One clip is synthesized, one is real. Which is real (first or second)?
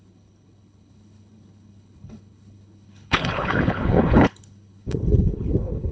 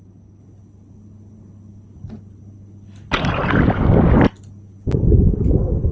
second